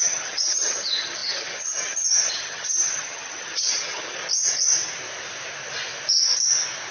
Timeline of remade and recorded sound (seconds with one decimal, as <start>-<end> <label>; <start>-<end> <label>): 0.0-4.2 remade; 4.2-6.9 recorded